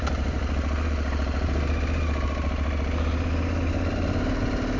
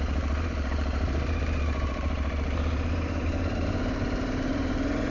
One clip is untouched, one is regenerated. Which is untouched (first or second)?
first